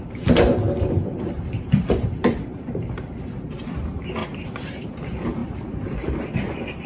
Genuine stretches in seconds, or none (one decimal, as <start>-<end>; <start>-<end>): 0.0-1.0; 3.4-4.2; 5.0-5.4; 6.2-6.9